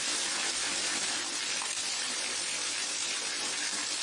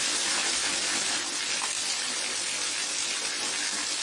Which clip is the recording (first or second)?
second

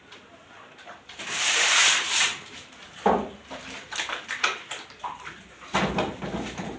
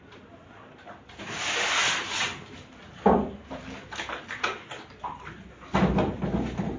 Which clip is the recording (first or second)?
second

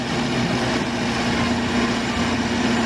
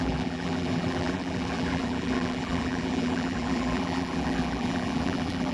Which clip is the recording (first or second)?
first